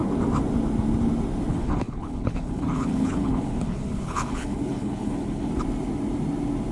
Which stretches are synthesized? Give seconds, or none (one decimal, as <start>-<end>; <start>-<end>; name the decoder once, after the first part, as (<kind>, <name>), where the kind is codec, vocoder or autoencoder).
1.5-5.5 (codec, HILCodec)